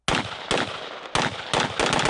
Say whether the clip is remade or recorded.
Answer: recorded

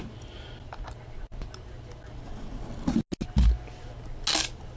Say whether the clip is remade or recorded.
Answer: recorded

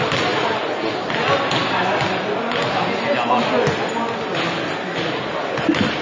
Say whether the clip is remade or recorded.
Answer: recorded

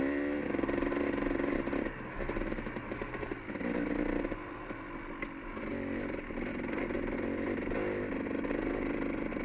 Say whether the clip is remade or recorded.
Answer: recorded